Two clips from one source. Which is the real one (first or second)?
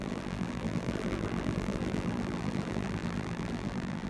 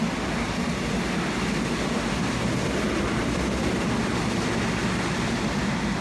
second